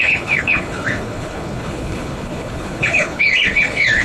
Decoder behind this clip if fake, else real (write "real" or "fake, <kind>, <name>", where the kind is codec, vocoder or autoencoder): fake, codec, HILCodec